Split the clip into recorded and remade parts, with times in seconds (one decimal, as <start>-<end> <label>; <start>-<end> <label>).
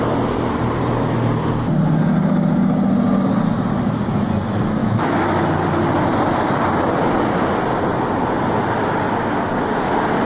0.0-4.8 recorded; 4.8-5.4 remade; 5.4-10.2 recorded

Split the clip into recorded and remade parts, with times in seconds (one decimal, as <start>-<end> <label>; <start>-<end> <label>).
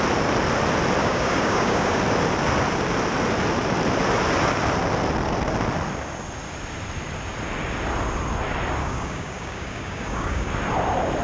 0.0-1.0 recorded; 1.0-2.0 remade; 2.0-8.8 recorded; 8.8-10.5 remade; 10.5-11.2 recorded